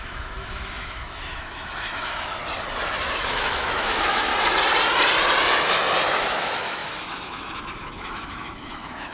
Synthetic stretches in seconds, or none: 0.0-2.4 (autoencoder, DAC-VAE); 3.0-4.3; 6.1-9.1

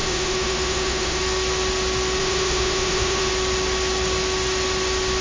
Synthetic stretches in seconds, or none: 0.0-1.2 (autoencoder, DAC-VAE); 2.2-3.3

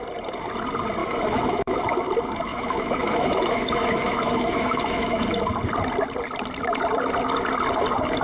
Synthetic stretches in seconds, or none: 1.0-1.8 (autoencoder, DAC-VAE); 2.5-5.4

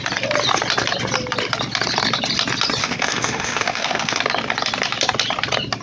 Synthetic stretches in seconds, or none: 2.8-4.2 (autoencoder, DAC-VAE)

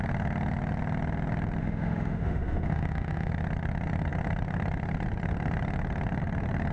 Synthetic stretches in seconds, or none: 1.6-3.3 (autoencoder, DAC-VAE)

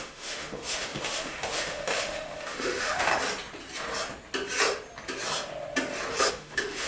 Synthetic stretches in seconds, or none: 0.0-3.1 (autoencoder, DAC-VAE); 6.3-6.9